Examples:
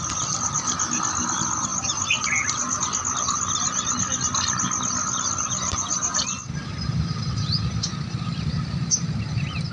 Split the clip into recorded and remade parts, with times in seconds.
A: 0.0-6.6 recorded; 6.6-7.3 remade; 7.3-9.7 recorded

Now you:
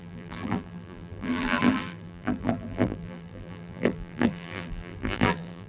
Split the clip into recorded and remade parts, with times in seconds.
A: 0.0-5.7 remade

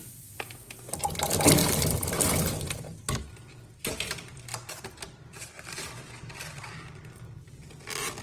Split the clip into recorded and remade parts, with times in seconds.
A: 0.0-1.6 recorded; 1.6-2.2 remade; 2.2-4.5 recorded; 4.5-8.2 remade

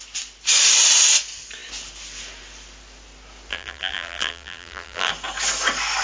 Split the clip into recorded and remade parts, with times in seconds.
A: 0.0-3.5 recorded; 3.5-5.1 remade; 5.1-6.0 recorded

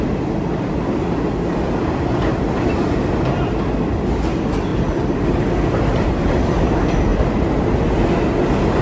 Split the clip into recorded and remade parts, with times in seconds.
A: 0.0-4.7 recorded; 4.7-6.4 remade; 6.4-7.1 recorded; 7.1-7.7 remade; 7.7-8.8 recorded

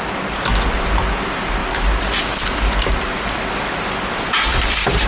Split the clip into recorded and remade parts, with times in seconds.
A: 0.0-1.6 recorded; 1.6-3.5 remade; 3.5-4.5 recorded; 4.5-5.1 remade